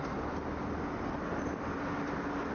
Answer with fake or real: real